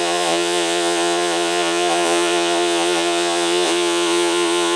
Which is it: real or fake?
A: fake